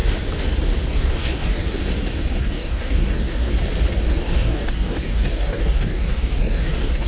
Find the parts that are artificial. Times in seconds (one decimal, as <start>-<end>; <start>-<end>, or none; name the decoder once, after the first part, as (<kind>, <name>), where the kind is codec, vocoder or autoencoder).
0.9-1.8 (codec, DAC); 2.4-3.5; 4.1-7.1